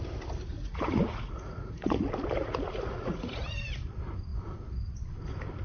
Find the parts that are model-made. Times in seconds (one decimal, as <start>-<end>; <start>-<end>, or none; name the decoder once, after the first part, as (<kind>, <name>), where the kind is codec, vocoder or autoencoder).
0.5-2.0 (vocoder, Vocos); 2.4-3.4